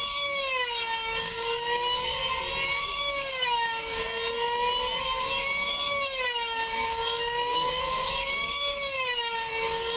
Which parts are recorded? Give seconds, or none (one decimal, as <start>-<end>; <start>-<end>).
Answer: 2.2-2.8; 4.0-5.0